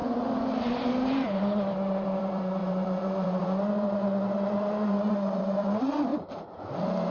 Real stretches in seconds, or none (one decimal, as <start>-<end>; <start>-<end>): none